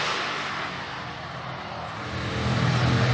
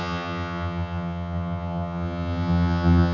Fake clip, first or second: second